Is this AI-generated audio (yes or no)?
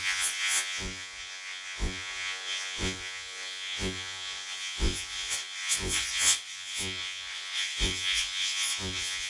yes